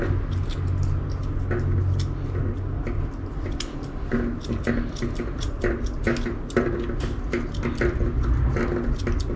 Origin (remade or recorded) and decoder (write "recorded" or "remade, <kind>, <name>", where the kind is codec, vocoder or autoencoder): recorded